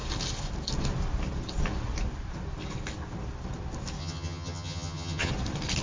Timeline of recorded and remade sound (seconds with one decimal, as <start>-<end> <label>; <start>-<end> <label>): 0.0-4.0 recorded; 4.0-5.3 remade; 5.3-5.8 recorded